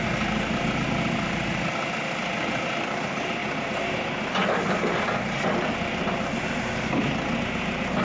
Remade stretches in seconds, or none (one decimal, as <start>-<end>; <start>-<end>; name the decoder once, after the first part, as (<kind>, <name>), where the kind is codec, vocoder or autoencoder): none